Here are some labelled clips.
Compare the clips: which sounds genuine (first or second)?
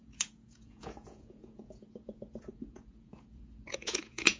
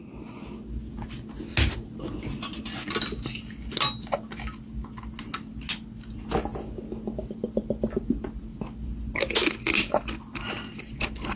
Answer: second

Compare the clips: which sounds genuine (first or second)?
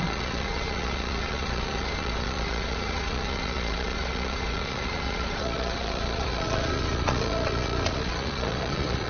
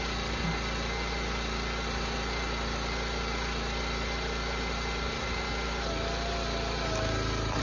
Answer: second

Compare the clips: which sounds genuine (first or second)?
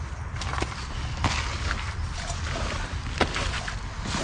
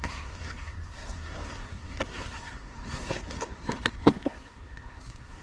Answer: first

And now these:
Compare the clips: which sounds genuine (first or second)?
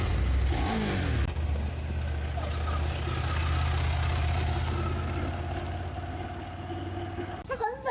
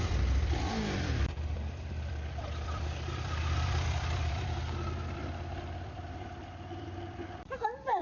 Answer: first